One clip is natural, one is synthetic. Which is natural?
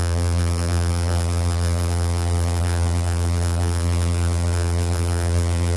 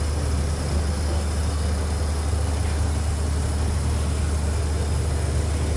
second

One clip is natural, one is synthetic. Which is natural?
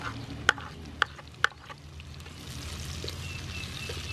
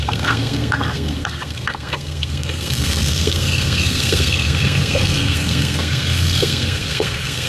first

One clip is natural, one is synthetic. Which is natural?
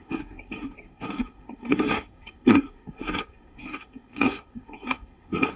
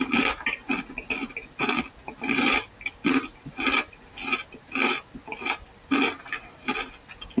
second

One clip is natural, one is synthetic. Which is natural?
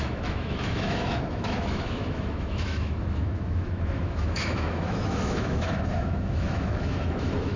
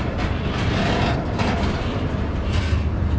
second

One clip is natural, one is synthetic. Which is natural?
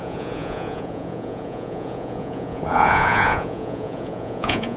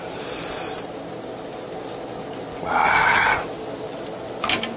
second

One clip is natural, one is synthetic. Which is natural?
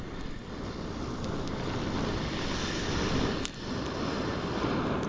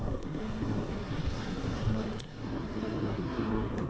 first